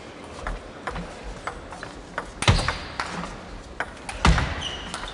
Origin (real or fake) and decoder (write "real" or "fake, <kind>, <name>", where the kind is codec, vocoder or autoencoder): real